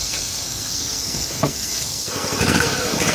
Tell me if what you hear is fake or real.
fake